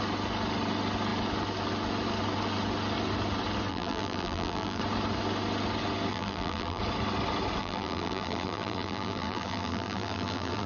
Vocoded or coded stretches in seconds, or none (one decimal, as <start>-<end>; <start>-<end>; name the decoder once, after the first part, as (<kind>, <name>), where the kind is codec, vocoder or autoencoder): 3.7-4.8 (vocoder, BigVGAN v2); 6.1-6.8; 7.6-10.7